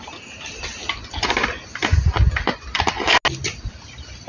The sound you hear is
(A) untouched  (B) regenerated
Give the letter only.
A